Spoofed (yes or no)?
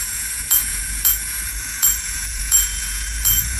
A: yes